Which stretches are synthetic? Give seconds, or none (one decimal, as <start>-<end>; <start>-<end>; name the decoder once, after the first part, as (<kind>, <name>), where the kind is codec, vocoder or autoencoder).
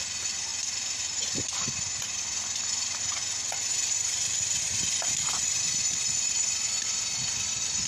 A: none